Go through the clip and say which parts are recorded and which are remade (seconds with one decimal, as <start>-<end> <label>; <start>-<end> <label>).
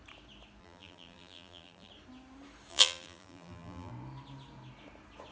0.0-0.6 recorded; 0.6-1.9 remade; 1.9-2.7 recorded; 2.7-3.9 remade; 3.9-5.3 recorded